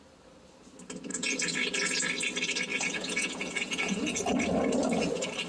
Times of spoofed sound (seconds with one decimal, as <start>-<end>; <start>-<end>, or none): 1.1-2.1; 2.7-4.2